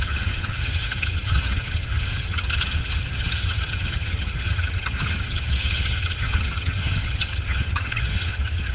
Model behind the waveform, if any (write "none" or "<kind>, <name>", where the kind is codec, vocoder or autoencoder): vocoder, HiFi-GAN